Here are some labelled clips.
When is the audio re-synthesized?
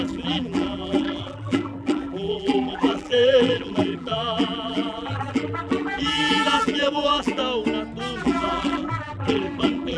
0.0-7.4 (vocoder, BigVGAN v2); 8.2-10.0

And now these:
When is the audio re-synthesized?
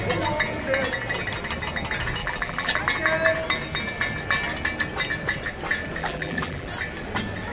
2.2-2.8 (vocoder, BigVGAN v2); 6.0-6.7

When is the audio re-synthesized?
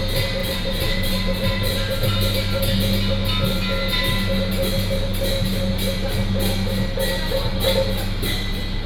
0.4-2.6 (vocoder, BigVGAN v2)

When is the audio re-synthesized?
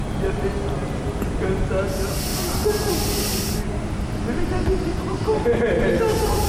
0.8-1.5 (vocoder, BigVGAN v2); 2.3-2.9